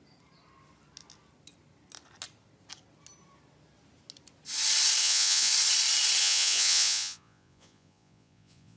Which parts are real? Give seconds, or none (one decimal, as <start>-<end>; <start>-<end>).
0.0-5.0; 5.5-6.2